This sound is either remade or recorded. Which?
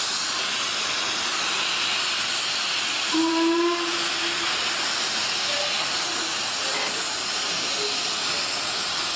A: recorded